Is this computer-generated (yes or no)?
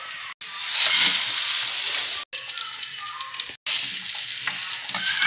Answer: no